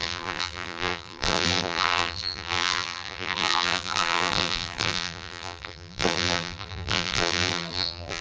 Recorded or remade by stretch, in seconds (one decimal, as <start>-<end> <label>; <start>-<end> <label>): 0.0-8.2 remade